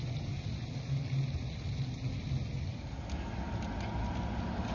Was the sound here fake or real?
real